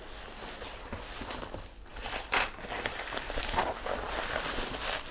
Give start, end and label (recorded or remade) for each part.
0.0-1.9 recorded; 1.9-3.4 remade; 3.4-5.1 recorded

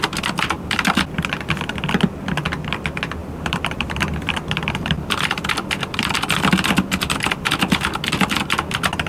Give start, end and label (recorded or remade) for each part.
0.0-3.2 recorded; 3.2-6.3 remade; 6.3-9.1 recorded

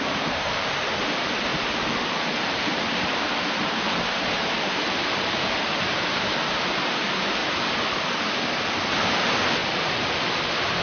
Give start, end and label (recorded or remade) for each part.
0.0-7.4 remade; 7.4-7.9 recorded; 7.9-10.8 remade

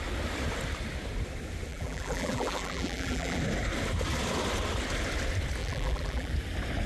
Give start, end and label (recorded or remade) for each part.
0.0-1.7 recorded; 1.7-3.4 remade; 3.4-5.6 recorded; 5.6-6.3 remade; 6.3-6.9 recorded

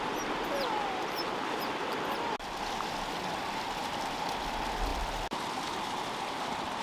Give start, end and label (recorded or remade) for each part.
0.0-4.9 recorded; 4.9-6.8 remade

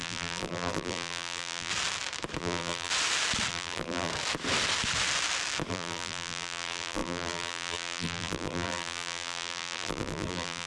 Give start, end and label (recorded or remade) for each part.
0.0-1.7 remade; 1.7-2.4 recorded; 2.4-2.9 remade; 2.9-3.5 recorded; 3.5-4.1 remade; 4.1-5.7 recorded; 5.7-10.7 remade

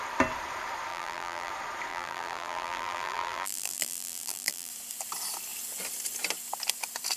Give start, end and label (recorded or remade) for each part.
0.0-0.9 recorded; 0.9-1.5 remade; 1.5-1.9 recorded; 1.9-4.7 remade; 4.7-7.2 recorded

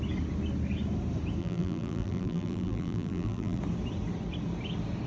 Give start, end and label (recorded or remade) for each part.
0.0-1.4 recorded; 1.4-3.6 remade; 3.6-5.1 recorded